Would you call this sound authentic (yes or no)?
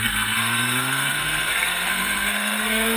no